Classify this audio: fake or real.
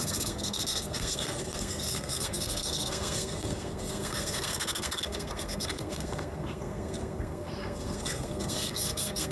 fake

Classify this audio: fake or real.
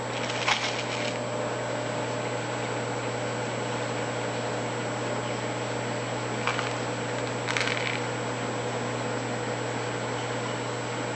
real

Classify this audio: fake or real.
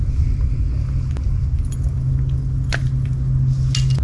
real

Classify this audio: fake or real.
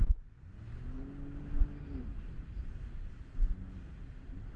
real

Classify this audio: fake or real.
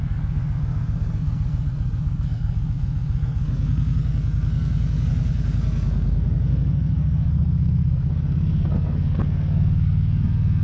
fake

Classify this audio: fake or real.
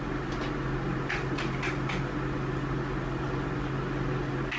real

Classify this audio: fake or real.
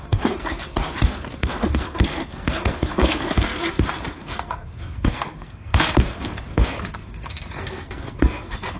fake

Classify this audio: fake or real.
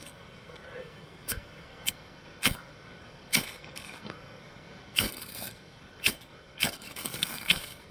fake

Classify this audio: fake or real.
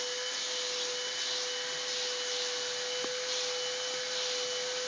real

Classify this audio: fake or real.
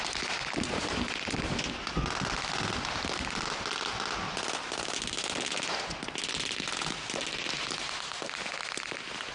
real